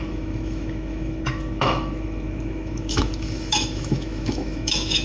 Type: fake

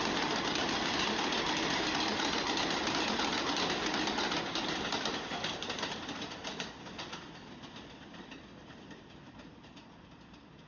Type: real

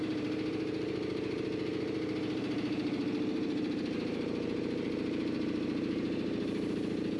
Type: fake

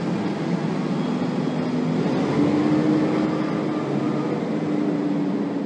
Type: real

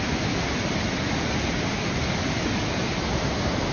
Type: real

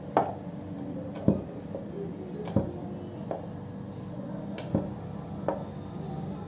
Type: real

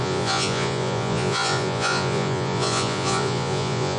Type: fake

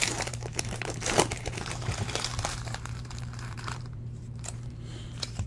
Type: fake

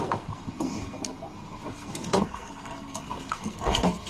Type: fake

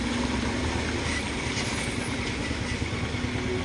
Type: real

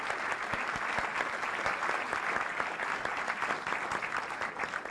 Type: real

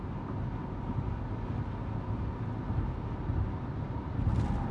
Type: real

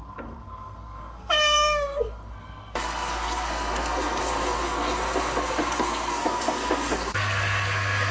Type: fake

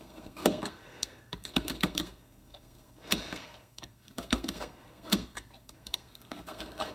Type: fake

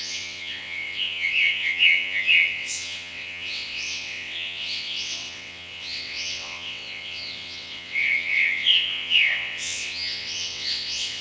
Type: fake